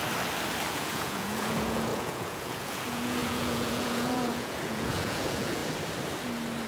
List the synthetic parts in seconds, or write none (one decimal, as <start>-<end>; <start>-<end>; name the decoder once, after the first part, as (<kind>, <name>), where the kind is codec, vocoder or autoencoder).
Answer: 0.7-5.6 (vocoder, Vocos)